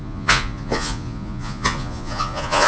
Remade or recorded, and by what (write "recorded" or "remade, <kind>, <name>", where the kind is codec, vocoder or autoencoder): remade, vocoder, Vocos